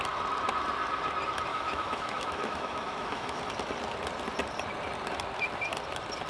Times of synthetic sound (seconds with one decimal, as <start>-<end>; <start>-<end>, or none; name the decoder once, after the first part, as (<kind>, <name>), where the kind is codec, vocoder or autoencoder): 1.5-3.4 (autoencoder, DAC-VAE)